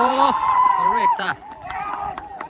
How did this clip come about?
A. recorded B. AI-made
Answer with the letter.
B